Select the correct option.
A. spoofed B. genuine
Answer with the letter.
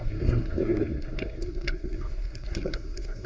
A